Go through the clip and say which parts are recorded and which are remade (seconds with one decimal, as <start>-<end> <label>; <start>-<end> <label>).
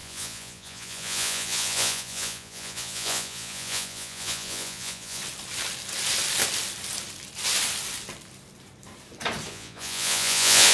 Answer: 0.0-5.2 remade; 5.2-9.5 recorded; 9.5-10.7 remade